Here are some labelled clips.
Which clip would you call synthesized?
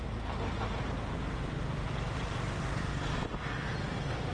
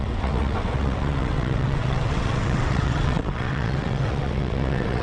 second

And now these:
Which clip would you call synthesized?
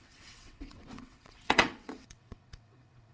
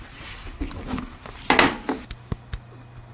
first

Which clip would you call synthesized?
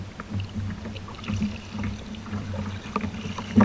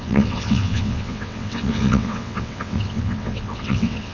second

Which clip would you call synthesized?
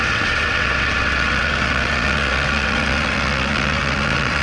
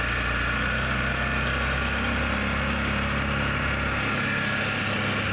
first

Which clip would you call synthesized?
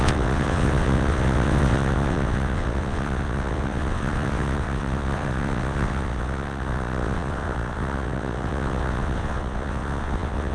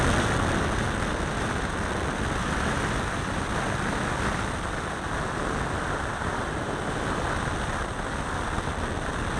first